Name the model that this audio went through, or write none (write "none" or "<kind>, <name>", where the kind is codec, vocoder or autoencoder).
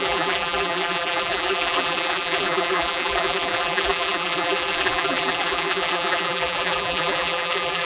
vocoder, BigVGAN v2